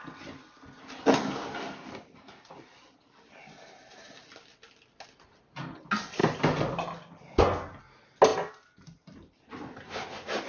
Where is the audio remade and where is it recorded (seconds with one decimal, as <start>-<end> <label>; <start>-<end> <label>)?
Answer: 0.0-10.5 recorded